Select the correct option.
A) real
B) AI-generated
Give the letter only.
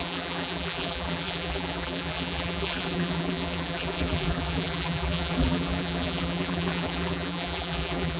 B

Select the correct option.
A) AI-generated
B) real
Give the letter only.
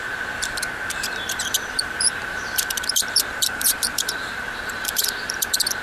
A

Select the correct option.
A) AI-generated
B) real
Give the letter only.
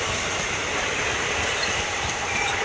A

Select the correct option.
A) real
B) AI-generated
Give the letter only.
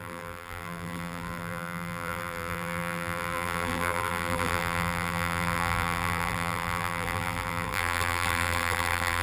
B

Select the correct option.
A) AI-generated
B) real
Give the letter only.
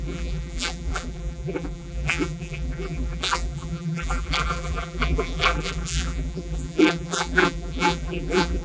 A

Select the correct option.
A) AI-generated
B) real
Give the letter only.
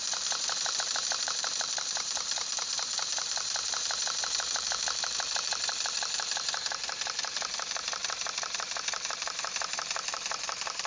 A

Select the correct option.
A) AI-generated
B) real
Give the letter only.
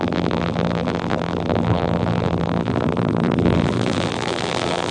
A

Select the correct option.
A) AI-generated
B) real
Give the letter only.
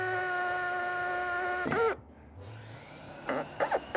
B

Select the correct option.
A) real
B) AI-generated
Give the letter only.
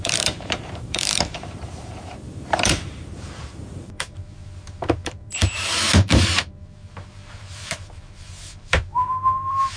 B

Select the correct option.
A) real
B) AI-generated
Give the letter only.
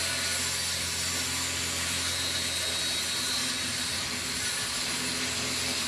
A